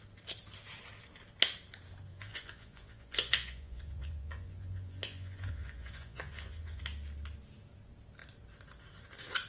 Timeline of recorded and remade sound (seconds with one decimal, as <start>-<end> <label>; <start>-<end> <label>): 0.0-2.1 recorded; 2.1-6.8 remade; 6.8-9.5 recorded